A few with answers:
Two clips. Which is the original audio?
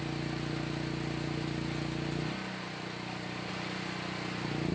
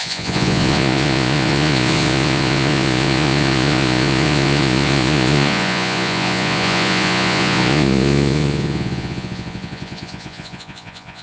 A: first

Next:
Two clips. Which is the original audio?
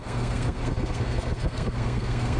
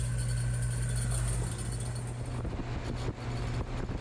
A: second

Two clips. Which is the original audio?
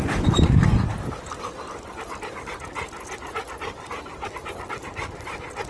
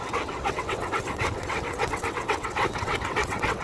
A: first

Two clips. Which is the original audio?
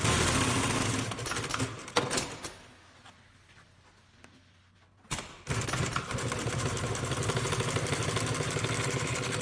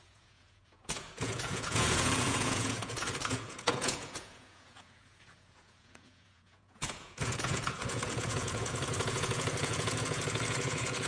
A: first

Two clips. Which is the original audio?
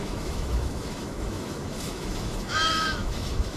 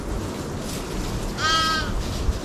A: second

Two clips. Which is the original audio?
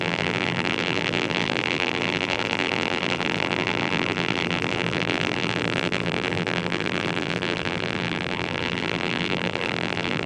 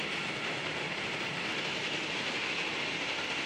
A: second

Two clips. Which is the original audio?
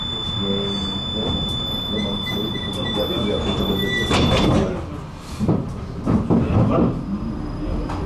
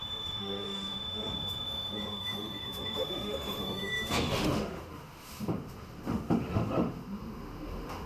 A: first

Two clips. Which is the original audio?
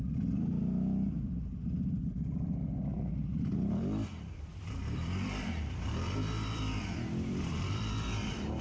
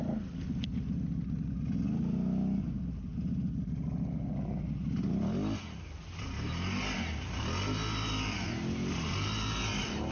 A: second